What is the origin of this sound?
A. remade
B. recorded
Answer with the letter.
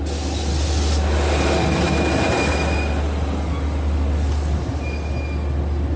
B